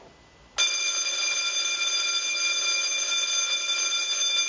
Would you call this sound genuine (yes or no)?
yes